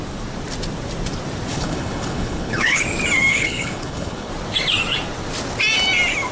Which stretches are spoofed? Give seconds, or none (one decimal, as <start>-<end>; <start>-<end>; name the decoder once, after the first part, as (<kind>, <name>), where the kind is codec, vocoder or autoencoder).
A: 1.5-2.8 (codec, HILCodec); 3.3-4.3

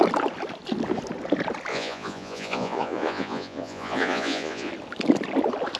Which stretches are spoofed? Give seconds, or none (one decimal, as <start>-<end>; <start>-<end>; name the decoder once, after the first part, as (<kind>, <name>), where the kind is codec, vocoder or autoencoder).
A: 1.7-4.7 (vocoder, Vocos)

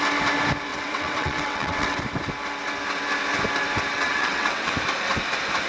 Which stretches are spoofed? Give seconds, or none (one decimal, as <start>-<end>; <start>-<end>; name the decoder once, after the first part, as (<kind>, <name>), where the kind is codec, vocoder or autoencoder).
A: 0.7-2.0 (vocoder, WaveNeXt); 3.9-4.7

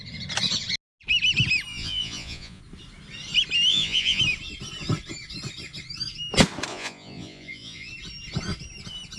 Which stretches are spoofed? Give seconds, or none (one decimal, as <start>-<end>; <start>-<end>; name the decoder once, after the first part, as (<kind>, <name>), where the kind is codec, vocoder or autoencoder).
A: 1.7-2.6 (vocoder, Vocos); 3.7-4.2; 6.7-7.9

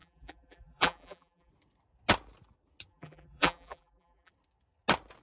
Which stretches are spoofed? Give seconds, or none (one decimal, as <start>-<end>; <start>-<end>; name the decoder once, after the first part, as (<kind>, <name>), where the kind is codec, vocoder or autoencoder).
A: 0.0-1.5 (vocoder, BigVGAN v2); 2.9-4.3

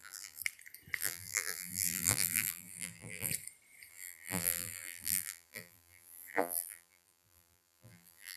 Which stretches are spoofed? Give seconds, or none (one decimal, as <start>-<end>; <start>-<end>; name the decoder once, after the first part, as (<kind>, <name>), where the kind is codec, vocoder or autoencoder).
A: 0.0-0.4 (vocoder, BigVGAN v2); 1.0-3.3; 3.9-8.4

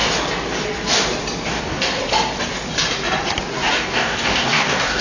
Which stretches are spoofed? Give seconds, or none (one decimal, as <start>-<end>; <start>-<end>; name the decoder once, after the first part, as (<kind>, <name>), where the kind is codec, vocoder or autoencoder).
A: 1.5-2.0 (codec, DAC); 3.7-5.0

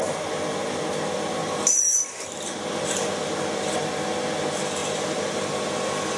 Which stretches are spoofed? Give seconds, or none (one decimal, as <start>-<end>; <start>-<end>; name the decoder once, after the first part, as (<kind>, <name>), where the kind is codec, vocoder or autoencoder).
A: 1.4-3.4 (vocoder, BigVGAN v2); 4.8-5.5